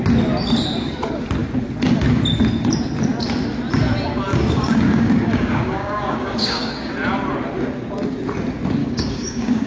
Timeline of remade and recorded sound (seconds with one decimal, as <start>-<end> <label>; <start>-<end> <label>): 0.0-4.3 recorded; 4.3-6.9 remade; 6.9-8.8 recorded; 8.8-9.7 remade